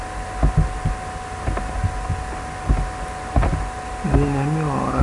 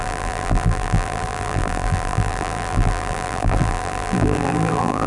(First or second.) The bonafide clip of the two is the first